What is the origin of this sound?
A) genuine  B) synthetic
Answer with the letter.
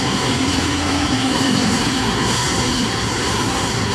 B